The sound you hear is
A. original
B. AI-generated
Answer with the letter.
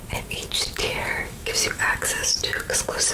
B